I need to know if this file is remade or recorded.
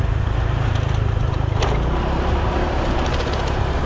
recorded